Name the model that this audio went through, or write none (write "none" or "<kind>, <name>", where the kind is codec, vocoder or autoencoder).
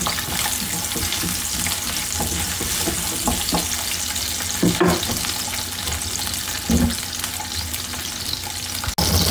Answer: none